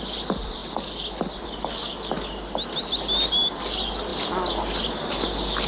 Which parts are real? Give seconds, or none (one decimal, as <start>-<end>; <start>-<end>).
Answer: 0.0-5.7